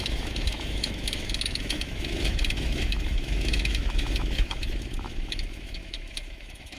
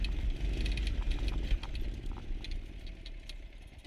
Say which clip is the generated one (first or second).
first